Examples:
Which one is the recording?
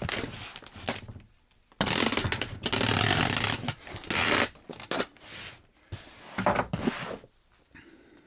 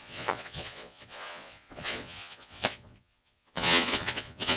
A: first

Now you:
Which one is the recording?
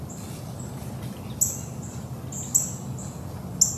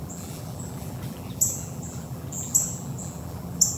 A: first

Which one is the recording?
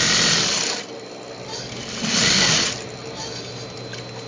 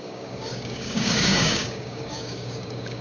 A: first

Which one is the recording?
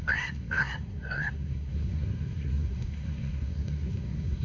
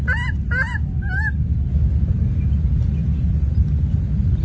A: second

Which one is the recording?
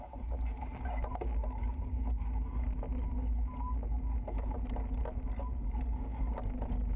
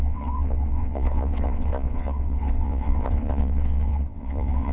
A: first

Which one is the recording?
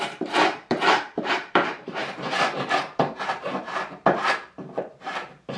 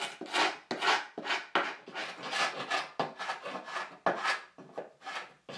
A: second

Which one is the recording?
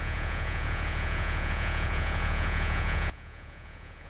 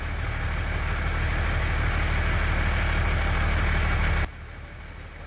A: second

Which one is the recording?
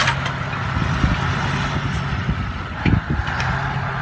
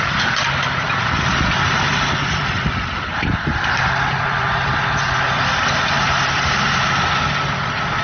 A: first